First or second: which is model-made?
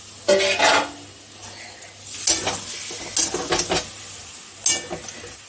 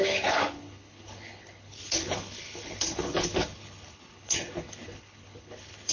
second